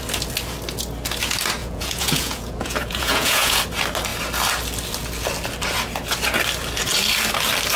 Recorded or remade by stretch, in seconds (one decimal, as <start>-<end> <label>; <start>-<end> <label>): 0.0-1.6 recorded; 1.6-3.6 remade; 3.6-7.8 recorded